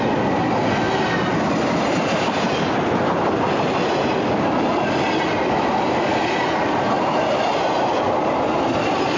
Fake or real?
real